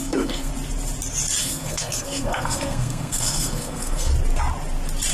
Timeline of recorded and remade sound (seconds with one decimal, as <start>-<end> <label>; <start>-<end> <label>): 0.0-0.5 remade; 0.5-1.4 recorded; 1.4-4.1 remade; 4.1-5.1 recorded

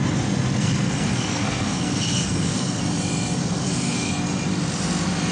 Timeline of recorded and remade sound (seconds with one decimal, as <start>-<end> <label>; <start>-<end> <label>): 0.0-0.6 recorded; 0.6-2.8 remade; 2.8-3.4 recorded; 3.4-4.1 remade; 4.1-5.3 recorded

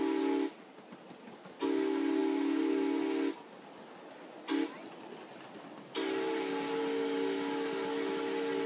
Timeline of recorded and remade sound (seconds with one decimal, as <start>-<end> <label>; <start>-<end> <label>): 0.0-8.7 recorded

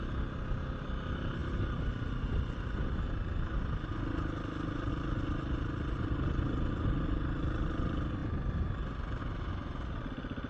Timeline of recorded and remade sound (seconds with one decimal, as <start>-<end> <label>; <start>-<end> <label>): 0.0-10.5 recorded

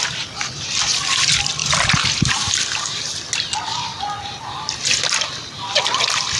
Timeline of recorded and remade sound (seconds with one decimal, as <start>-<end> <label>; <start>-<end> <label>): 0.0-1.6 recorded; 1.6-2.5 remade; 2.5-6.4 recorded